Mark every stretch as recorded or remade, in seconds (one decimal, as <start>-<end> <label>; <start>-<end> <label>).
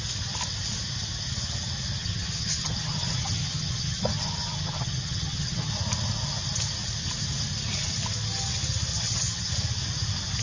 0.0-2.0 recorded; 2.0-5.7 remade; 5.7-8.9 recorded; 8.9-9.5 remade; 9.5-10.4 recorded